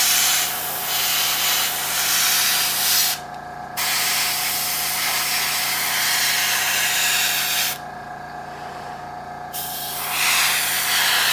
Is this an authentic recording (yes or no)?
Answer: yes